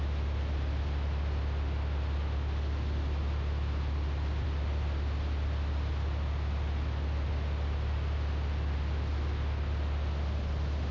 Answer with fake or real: real